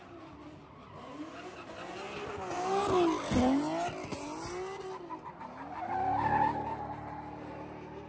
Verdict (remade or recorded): recorded